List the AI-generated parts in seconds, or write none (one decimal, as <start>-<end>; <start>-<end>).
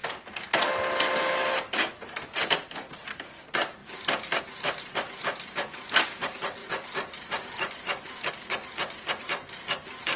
6.6-8.3